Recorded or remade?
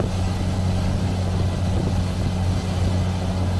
recorded